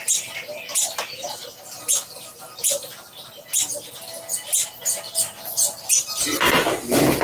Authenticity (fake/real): real